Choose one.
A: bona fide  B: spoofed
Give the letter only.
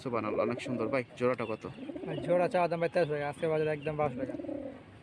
A